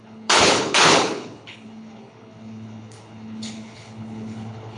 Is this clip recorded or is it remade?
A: remade